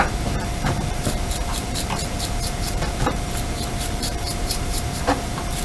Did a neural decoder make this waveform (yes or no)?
yes